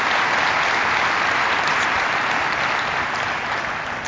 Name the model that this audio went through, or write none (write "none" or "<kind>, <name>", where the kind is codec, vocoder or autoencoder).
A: none